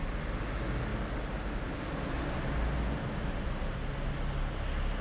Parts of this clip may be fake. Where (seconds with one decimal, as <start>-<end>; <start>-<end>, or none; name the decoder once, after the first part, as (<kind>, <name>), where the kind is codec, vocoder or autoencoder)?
none

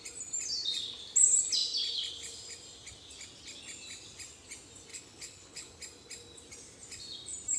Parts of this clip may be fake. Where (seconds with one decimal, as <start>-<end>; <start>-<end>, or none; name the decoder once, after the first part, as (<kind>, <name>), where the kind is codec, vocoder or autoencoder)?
4.9-5.7 (codec, HILCodec)